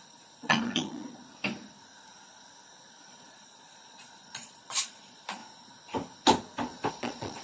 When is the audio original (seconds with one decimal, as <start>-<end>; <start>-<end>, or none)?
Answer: 1.2-2.7; 5.4-6.9